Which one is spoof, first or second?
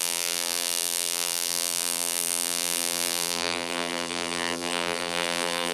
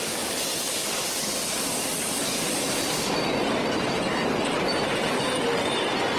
first